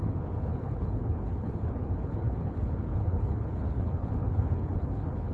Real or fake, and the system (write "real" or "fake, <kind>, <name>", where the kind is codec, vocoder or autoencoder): fake, codec, HILCodec